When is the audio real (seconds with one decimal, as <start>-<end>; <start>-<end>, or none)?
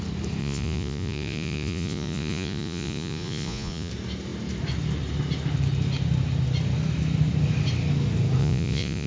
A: 0.0-0.4; 3.9-8.4